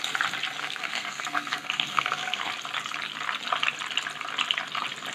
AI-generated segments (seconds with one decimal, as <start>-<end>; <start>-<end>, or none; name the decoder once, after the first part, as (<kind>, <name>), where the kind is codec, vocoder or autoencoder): 0.6-2.5 (codec, SNAC)